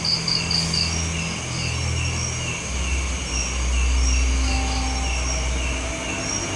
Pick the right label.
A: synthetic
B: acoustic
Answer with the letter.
B